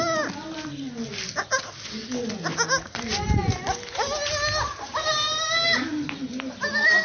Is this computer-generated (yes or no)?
no